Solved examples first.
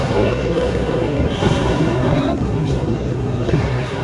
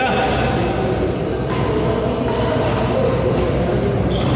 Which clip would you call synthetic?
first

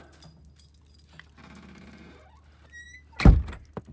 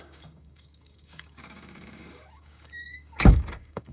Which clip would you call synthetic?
second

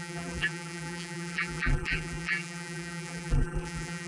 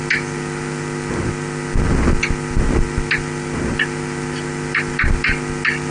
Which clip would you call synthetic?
first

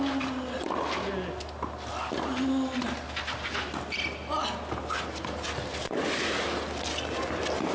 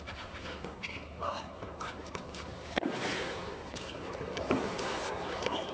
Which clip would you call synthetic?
second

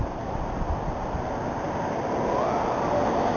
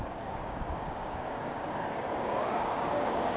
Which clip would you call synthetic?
second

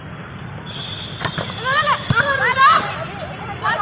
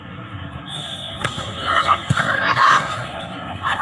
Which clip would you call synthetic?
second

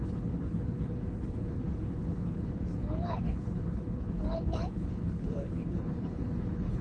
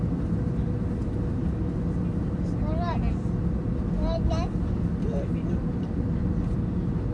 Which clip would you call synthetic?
first